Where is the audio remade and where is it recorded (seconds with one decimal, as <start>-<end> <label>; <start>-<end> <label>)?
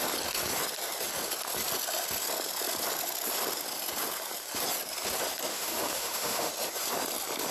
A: 0.0-5.5 recorded; 5.5-6.5 remade; 6.5-7.5 recorded